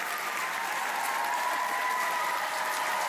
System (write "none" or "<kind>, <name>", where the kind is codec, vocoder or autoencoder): none